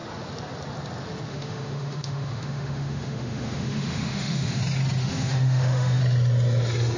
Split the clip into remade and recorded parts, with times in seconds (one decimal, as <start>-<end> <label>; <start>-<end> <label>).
0.0-1.3 recorded; 1.3-4.6 remade; 4.6-5.0 recorded; 5.0-6.0 remade; 6.0-7.0 recorded